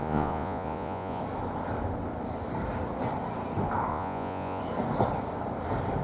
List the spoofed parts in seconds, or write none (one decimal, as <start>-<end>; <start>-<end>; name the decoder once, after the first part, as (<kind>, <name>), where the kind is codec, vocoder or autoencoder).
0.0-1.2 (vocoder, Vocos); 3.9-4.6